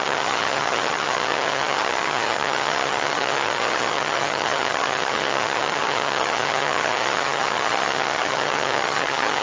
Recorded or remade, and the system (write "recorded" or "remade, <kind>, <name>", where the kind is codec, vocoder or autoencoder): remade, vocoder, HiFi-GAN